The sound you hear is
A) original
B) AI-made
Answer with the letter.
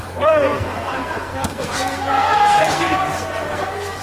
B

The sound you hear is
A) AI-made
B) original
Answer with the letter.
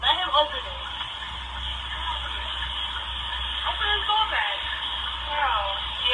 B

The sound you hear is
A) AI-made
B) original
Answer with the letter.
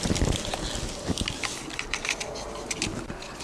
B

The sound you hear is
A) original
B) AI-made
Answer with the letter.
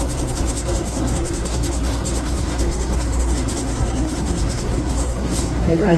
B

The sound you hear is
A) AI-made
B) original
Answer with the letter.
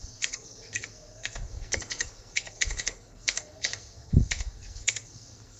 A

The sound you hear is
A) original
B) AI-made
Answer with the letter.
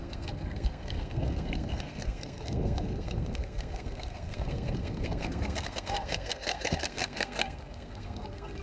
B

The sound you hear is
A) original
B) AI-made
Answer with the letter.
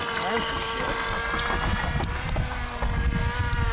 A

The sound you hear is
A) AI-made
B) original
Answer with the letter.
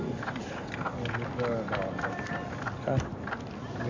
B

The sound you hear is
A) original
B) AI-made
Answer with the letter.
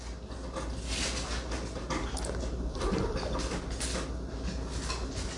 A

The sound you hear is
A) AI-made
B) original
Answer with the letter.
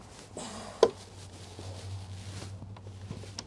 B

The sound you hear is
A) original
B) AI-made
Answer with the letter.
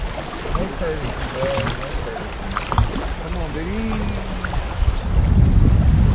A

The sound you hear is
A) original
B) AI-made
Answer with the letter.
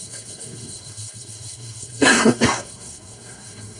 B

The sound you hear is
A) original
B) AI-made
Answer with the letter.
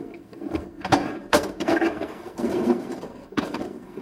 B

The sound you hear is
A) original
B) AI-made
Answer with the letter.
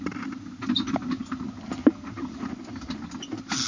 A